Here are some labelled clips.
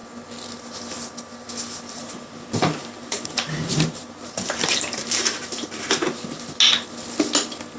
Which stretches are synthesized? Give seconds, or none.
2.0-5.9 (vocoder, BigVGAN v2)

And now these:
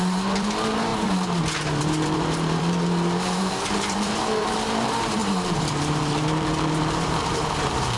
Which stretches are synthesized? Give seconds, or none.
0.0-8.0 (vocoder, BigVGAN v2)

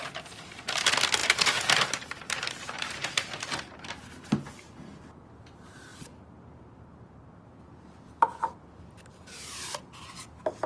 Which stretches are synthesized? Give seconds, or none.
1.2-5.0 (vocoder, BigVGAN v2); 5.9-10.0

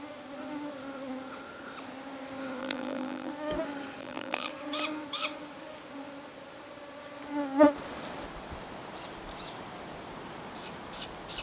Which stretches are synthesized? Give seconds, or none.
2.6-3.3 (vocoder, BigVGAN v2); 4.0-4.5

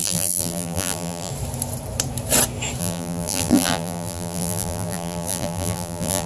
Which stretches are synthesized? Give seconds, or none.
0.0-1.3 (vocoder, BigVGAN v2); 2.8-6.3

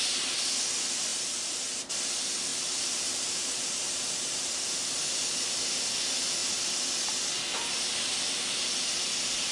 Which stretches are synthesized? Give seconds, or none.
1.1-1.9 (vocoder, BigVGAN v2); 2.5-4.8